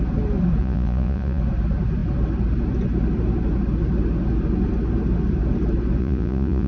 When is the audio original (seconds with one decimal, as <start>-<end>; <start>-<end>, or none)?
0.0-0.6; 1.4-6.0